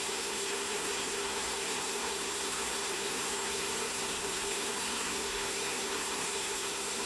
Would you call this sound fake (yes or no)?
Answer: yes